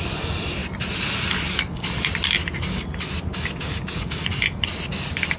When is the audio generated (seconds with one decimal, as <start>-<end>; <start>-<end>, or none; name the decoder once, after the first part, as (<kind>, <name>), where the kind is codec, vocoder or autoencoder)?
3.3-4.3 (codec, DAC)